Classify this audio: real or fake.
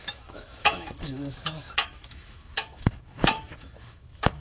fake